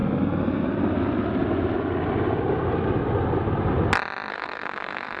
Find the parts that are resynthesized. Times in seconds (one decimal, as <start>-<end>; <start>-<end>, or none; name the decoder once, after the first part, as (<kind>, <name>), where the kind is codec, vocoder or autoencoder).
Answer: 4.3-5.2 (codec, SNAC)